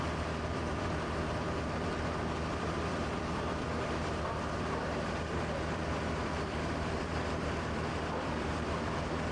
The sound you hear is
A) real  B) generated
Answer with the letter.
B